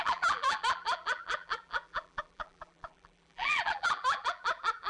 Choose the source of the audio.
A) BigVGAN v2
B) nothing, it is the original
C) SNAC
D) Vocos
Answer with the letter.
A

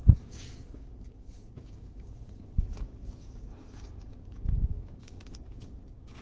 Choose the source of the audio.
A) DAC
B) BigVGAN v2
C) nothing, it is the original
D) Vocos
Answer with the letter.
A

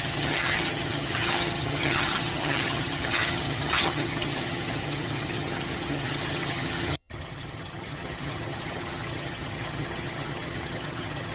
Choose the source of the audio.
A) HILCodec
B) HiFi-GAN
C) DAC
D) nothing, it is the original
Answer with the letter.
B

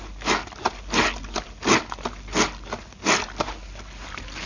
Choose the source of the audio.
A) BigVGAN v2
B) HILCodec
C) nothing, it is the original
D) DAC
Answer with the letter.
C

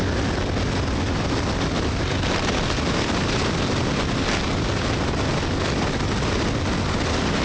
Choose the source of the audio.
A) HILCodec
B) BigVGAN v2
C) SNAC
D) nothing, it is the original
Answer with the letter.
B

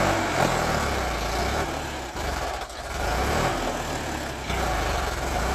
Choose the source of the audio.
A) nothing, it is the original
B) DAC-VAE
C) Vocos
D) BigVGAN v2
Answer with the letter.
A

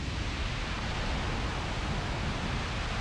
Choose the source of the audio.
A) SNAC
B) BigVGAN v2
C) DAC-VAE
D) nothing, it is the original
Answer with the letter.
D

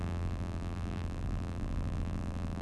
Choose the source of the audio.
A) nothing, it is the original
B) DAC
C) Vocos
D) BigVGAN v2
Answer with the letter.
D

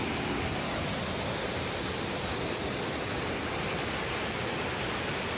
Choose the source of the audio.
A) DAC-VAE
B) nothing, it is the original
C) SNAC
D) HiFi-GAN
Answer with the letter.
B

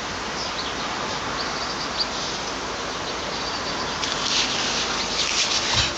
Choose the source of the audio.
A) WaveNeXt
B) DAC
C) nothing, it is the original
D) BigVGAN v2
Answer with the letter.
C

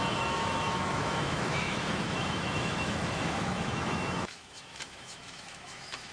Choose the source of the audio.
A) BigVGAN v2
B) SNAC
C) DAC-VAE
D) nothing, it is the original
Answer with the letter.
C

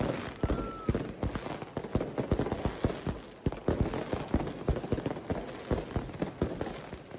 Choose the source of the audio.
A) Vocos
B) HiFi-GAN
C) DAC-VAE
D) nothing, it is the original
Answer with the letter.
D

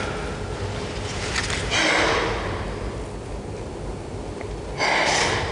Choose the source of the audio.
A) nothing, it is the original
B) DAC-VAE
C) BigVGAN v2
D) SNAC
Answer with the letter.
A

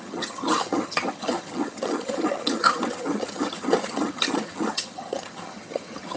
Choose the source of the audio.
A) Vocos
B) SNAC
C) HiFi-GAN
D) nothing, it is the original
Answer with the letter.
C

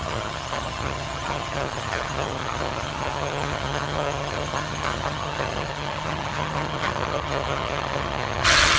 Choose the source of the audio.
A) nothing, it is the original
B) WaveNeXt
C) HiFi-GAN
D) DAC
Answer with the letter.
C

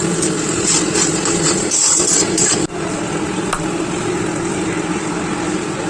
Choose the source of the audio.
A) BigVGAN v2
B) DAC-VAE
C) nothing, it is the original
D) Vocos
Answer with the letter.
C